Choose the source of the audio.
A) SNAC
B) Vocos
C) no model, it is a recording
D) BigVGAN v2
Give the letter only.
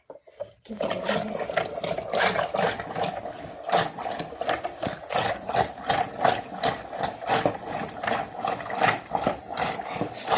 C